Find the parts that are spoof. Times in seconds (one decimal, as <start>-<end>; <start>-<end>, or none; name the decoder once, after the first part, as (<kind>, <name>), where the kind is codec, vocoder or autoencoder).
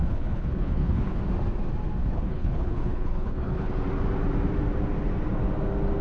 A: 0.0-1.2 (codec, HILCodec); 2.0-3.7